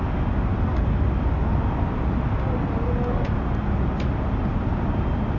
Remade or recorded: recorded